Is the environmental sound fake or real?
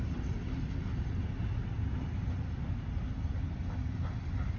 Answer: real